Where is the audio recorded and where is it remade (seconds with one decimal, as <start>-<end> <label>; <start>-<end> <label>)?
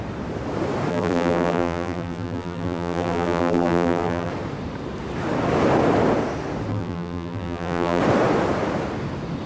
0.0-0.9 recorded; 0.9-4.3 remade; 4.3-6.7 recorded; 6.7-8.0 remade; 8.0-9.5 recorded